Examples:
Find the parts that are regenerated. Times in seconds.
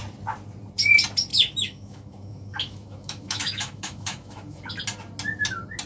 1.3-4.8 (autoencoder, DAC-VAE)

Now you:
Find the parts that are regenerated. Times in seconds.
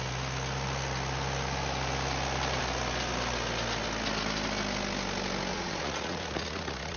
5.5-7.0 (vocoder, Vocos)